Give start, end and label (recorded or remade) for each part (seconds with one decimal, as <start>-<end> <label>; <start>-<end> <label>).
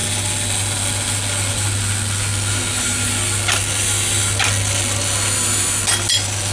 0.0-6.5 recorded